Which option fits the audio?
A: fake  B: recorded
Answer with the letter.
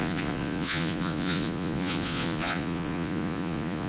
A